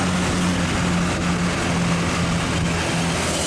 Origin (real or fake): real